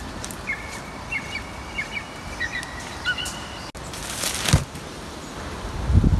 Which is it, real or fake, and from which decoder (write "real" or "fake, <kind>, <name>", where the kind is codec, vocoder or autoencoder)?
real